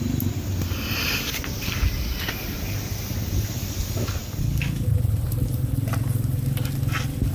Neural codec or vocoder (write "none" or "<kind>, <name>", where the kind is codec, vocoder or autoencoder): none